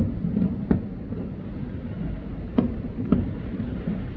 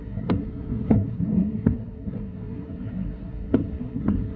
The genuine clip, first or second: first